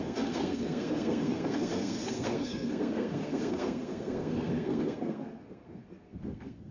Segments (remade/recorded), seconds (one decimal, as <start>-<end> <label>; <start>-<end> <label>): 0.0-6.7 remade